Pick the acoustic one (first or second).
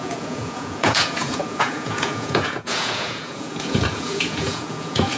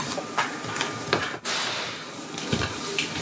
second